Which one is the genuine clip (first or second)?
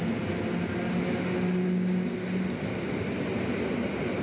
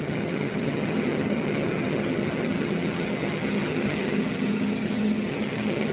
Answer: first